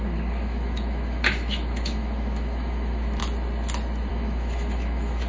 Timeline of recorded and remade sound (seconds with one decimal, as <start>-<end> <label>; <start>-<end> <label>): 0.0-3.2 remade; 3.2-4.1 recorded; 4.1-5.3 remade